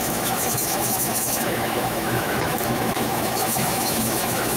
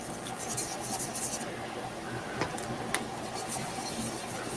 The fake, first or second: first